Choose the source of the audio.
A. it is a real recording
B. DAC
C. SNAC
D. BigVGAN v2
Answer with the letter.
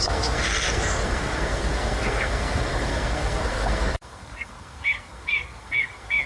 C